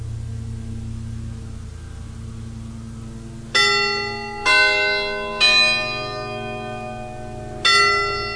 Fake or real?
real